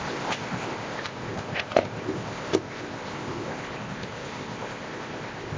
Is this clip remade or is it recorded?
remade